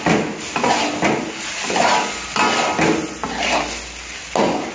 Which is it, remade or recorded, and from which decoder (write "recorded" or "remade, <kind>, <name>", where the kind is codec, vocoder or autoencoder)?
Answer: recorded